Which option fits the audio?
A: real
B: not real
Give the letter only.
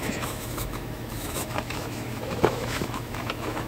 B